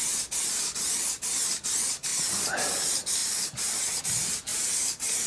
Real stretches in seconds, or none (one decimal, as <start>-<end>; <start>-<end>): 0.0-3.2; 4.0-4.5